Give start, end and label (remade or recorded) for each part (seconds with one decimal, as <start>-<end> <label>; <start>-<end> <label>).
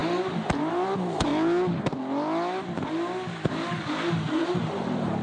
0.0-0.7 recorded; 0.7-1.3 remade; 1.3-4.3 recorded; 4.3-5.2 remade